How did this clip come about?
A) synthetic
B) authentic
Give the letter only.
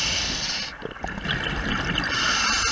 B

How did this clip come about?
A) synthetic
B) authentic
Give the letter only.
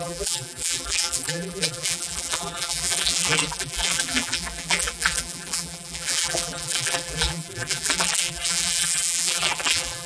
A